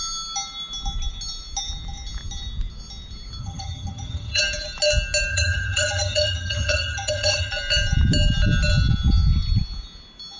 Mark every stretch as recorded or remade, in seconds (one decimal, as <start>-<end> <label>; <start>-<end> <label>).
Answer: 0.0-3.4 recorded; 3.4-4.4 remade; 4.4-5.3 recorded; 5.3-7.5 remade; 7.5-10.4 recorded

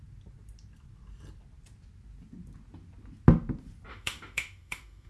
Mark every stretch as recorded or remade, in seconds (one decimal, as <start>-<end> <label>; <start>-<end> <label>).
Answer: 0.0-3.9 recorded; 3.9-5.1 remade

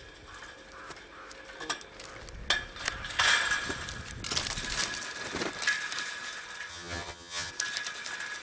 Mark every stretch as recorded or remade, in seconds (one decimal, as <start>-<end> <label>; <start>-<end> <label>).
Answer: 0.0-6.7 recorded; 6.7-7.5 remade; 7.5-8.4 recorded